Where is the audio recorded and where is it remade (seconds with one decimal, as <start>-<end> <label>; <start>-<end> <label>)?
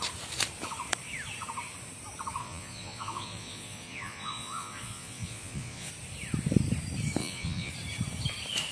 0.0-2.4 recorded; 2.4-5.9 remade; 5.9-7.2 recorded; 7.2-7.7 remade; 7.7-8.7 recorded